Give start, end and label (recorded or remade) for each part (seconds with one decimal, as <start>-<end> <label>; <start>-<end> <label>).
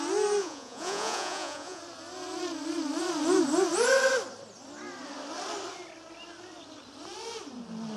0.0-0.4 recorded; 0.4-1.8 remade; 1.8-8.0 recorded